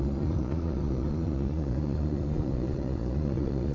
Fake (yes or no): yes